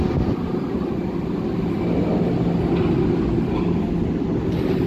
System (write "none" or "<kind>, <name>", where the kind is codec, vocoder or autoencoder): none